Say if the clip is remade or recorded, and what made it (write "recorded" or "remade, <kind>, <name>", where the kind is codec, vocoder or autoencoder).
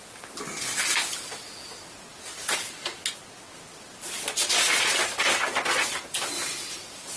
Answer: recorded